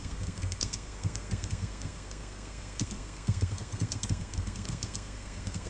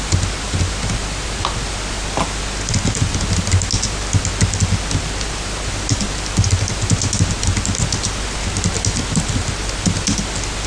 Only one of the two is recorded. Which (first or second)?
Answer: second